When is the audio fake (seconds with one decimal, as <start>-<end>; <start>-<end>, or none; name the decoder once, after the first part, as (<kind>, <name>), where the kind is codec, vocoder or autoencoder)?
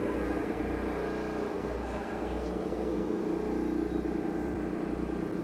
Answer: 0.0-0.6 (codec, SNAC); 1.5-3.2